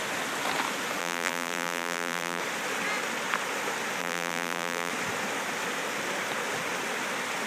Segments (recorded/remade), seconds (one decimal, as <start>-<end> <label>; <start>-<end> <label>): 0.0-1.0 recorded; 1.0-2.4 remade; 2.4-4.0 recorded; 4.0-4.9 remade; 4.9-7.5 recorded